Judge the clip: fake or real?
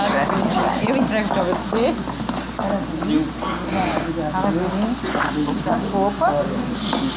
real